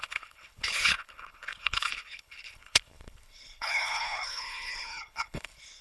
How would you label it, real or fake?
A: fake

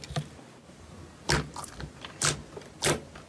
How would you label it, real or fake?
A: real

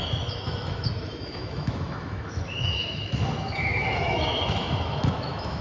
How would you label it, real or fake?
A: fake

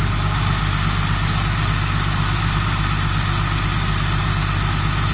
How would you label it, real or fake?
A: real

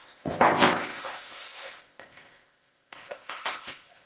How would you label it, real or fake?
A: fake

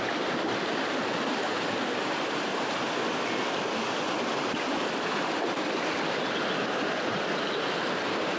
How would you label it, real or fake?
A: real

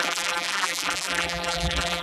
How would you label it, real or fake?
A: fake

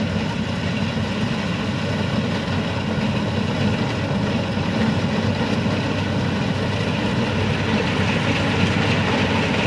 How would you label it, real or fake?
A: real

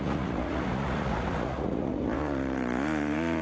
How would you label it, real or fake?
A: fake